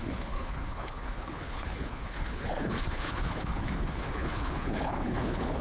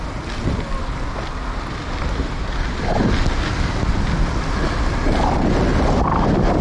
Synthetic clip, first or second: first